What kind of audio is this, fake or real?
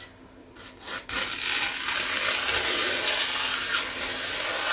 real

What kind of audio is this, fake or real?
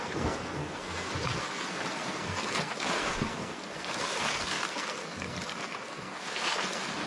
fake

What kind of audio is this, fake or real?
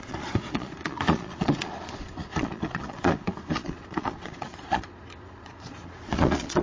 fake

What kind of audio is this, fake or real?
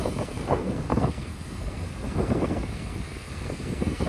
fake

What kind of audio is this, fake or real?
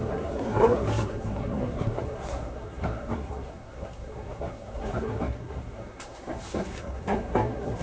fake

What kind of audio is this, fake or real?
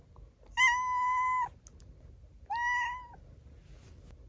real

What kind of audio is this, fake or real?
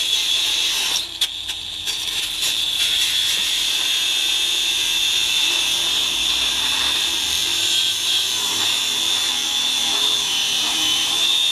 fake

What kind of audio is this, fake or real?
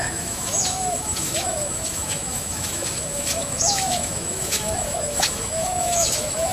fake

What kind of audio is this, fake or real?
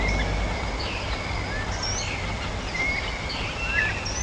real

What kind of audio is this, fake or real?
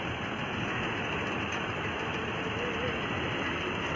real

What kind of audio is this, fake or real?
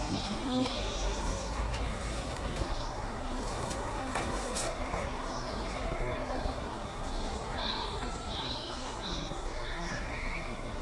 fake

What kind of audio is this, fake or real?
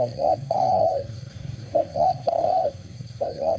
fake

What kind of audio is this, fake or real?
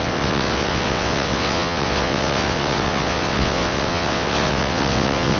fake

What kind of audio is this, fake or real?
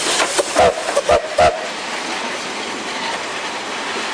real